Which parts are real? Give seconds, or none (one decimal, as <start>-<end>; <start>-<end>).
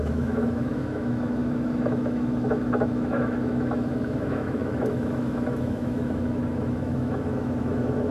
none